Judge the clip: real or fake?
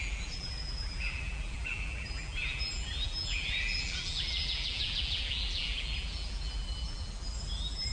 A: fake